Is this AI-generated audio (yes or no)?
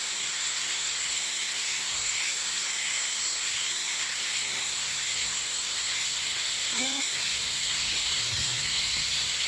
yes